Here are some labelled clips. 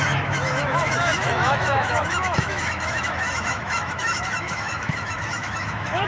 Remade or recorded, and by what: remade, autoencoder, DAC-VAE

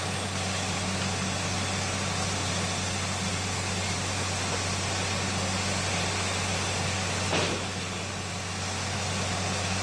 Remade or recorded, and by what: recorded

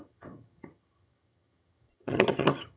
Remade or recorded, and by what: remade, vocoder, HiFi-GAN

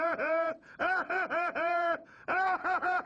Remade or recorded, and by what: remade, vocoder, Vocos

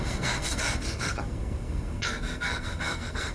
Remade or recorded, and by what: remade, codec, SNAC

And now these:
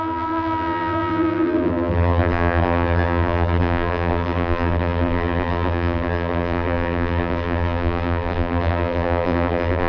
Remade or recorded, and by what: remade, vocoder, BigVGAN v2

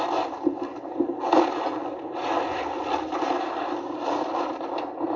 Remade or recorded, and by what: recorded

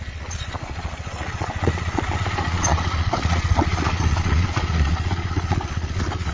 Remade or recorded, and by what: remade, vocoder, Vocos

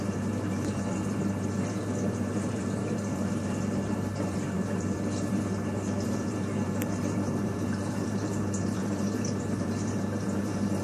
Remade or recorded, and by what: remade, vocoder, BigVGAN v2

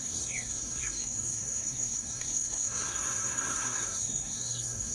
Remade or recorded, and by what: remade, codec, SNAC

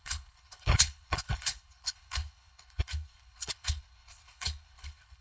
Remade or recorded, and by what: remade, codec, HILCodec